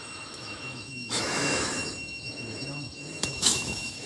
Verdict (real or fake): fake